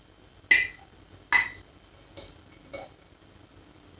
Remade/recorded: recorded